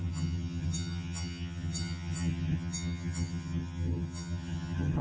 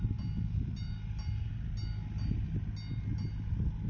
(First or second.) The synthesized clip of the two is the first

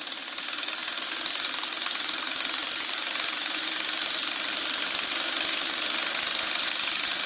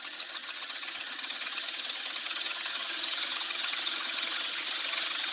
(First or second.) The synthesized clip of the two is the second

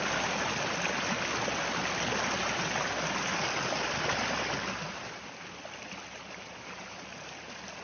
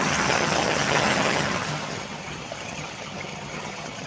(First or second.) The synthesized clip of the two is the second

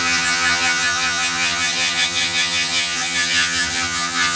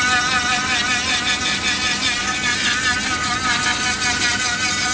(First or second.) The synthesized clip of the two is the first